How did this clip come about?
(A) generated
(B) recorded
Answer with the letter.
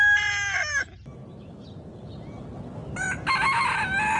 B